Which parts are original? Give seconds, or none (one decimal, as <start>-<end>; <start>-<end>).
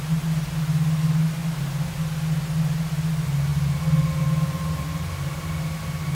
0.0-6.1